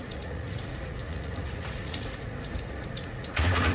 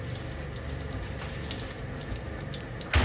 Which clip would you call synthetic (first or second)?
first